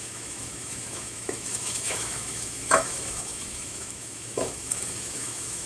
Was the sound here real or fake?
fake